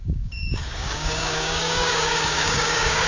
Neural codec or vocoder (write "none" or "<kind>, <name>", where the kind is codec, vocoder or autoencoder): codec, DAC